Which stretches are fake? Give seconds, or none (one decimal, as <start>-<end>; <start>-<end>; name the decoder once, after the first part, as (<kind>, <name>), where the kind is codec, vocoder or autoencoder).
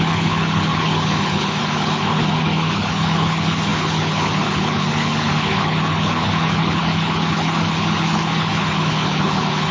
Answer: 0.0-9.7 (codec, HILCodec)